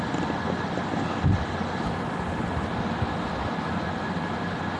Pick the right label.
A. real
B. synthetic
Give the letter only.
A